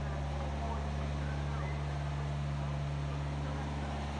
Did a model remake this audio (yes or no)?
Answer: no